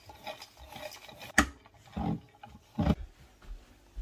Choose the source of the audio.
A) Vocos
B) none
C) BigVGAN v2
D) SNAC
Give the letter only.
B